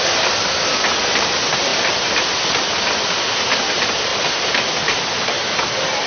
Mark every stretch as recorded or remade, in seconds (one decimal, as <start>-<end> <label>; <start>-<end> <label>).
0.0-6.1 recorded